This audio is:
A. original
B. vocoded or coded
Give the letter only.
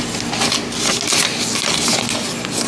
A